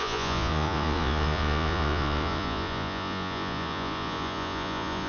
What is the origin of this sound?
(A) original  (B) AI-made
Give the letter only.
B